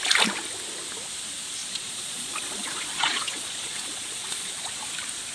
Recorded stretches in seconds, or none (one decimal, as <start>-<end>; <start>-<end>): 0.0-1.6; 4.8-5.3